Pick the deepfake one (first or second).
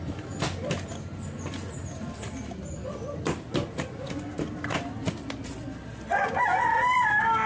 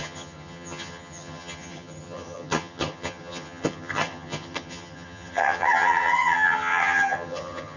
second